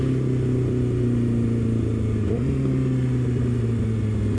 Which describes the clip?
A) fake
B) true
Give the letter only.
B